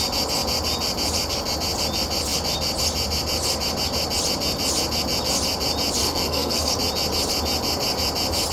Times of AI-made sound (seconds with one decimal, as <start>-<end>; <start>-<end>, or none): 6.0-6.7